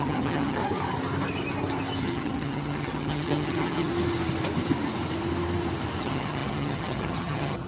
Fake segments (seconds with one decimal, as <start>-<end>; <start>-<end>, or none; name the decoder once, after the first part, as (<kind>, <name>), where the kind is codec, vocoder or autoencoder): 0.0-0.6 (vocoder, HiFi-GAN); 2.0-3.9; 6.0-7.7